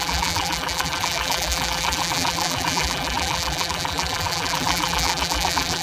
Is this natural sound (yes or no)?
no